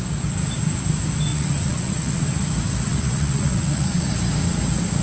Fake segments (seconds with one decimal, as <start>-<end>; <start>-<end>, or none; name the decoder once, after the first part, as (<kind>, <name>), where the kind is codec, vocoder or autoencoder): 1.3-2.2 (vocoder, Vocos); 2.9-4.1